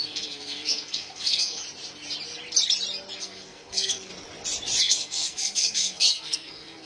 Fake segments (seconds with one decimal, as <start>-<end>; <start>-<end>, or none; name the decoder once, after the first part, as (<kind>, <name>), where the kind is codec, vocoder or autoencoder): 0.0-1.6 (codec, SNAC); 3.2-4.1; 4.8-6.9